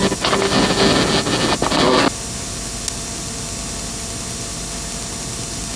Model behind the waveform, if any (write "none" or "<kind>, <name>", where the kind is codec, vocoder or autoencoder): none